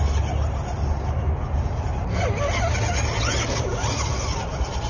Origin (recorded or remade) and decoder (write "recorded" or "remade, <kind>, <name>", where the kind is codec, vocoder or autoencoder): recorded